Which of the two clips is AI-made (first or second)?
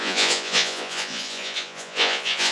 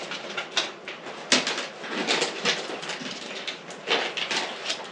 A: first